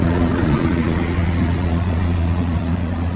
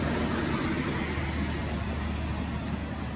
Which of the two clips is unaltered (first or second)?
second